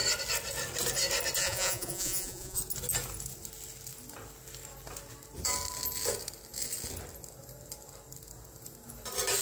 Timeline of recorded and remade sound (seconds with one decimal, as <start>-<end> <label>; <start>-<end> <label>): 0.0-1.4 recorded; 1.4-2.6 remade; 2.6-9.4 recorded